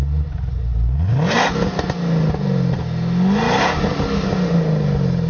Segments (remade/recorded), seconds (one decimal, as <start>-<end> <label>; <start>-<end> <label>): 0.0-5.3 recorded